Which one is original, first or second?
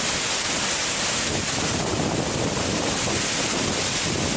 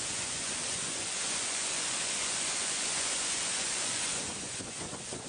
first